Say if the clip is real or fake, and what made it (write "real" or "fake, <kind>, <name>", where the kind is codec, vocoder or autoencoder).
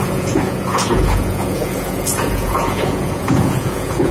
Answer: fake, vocoder, Vocos